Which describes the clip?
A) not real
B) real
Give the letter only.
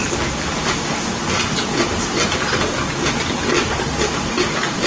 B